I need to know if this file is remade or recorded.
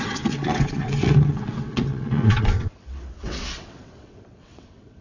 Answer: remade